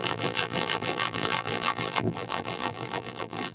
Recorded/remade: remade